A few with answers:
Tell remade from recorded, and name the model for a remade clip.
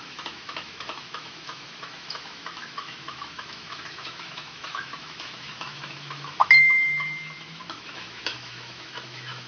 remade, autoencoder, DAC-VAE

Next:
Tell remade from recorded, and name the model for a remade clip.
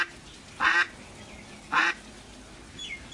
recorded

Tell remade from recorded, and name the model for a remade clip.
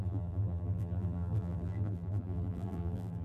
remade, vocoder, BigVGAN v2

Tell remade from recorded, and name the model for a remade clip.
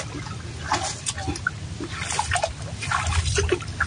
recorded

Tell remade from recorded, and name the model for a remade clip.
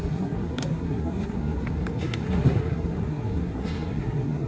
remade, codec, SNAC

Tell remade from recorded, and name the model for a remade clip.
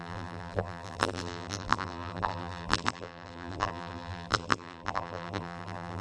remade, vocoder, BigVGAN v2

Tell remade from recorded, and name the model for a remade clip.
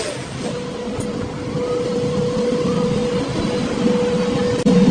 recorded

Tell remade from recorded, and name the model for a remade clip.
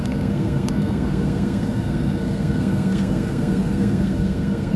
remade, codec, SNAC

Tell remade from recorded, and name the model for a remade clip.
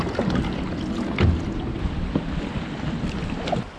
recorded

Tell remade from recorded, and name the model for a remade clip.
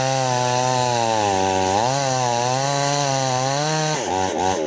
recorded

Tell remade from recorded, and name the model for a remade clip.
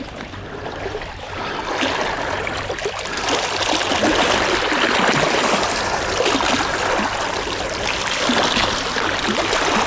recorded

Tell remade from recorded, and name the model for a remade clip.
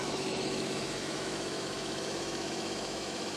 remade, autoencoder, DAC-VAE